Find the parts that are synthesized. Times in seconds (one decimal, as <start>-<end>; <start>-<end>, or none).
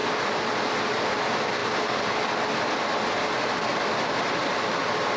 0.0-1.2; 1.6-2.8; 3.7-4.4